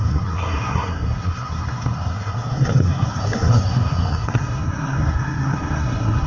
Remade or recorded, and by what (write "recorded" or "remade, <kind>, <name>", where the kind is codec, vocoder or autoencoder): remade, codec, SNAC